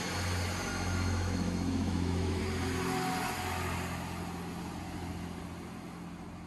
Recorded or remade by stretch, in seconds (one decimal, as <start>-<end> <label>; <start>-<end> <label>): 0.0-0.7 recorded; 0.7-2.4 remade; 2.4-6.5 recorded